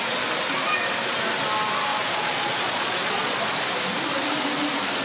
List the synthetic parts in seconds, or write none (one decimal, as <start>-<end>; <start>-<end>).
1.9-3.4